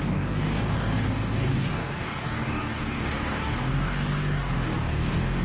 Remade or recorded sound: remade